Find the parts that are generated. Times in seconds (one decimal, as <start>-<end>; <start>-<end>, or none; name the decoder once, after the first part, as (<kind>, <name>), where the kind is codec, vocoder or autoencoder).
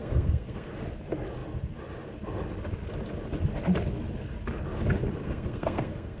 0.0-0.7 (codec, SNAC); 5.2-6.2